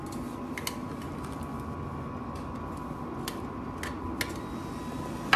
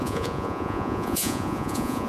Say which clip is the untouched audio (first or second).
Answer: first